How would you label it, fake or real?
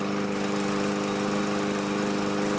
real